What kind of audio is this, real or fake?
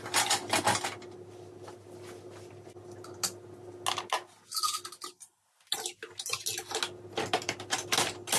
real